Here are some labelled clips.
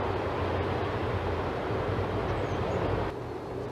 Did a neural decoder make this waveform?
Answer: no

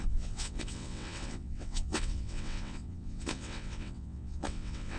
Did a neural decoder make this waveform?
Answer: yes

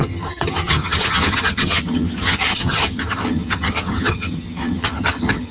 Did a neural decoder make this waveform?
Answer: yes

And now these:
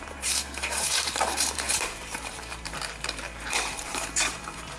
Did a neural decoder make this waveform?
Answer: yes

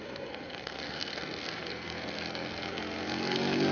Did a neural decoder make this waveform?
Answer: yes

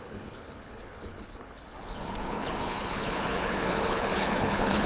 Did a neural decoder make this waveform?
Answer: yes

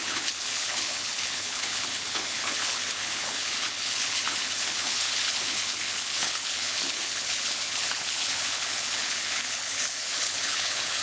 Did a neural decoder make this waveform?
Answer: yes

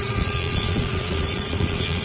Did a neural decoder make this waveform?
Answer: yes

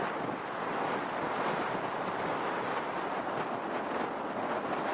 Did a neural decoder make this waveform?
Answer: no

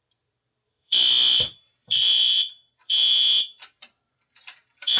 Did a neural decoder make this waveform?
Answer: yes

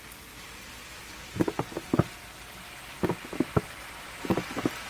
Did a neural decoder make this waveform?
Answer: no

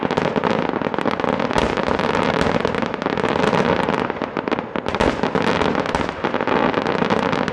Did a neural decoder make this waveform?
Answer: no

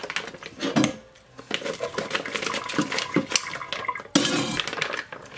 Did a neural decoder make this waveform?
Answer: no